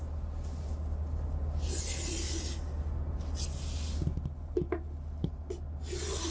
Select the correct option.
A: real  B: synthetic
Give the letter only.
A